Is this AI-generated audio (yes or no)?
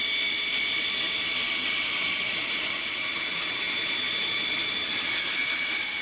no